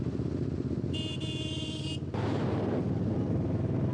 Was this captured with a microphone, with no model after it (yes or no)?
yes